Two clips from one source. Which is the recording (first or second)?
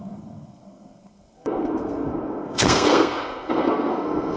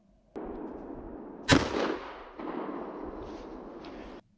second